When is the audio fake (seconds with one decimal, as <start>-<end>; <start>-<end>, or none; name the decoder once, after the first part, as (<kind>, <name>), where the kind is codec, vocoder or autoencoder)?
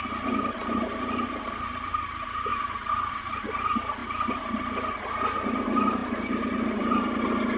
none